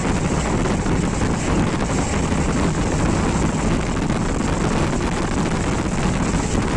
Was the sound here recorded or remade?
recorded